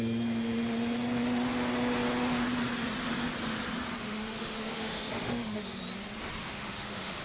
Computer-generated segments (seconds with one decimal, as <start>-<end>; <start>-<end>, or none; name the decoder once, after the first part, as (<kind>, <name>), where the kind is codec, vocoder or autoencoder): 4.0-5.8 (autoencoder, DAC-VAE); 6.4-7.2